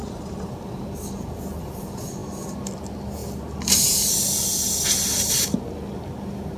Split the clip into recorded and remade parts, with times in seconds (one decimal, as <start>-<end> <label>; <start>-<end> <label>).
0.0-1.4 remade; 1.4-6.6 recorded